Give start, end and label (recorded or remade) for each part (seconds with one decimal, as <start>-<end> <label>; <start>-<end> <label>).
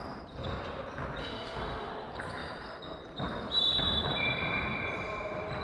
0.0-1.2 recorded; 1.2-1.9 remade; 1.9-5.6 recorded